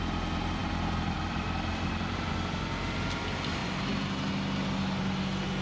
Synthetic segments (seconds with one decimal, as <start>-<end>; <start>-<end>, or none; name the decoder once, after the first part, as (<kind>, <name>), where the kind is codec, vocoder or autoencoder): 0.6-2.3 (vocoder, BigVGAN v2); 3.6-4.3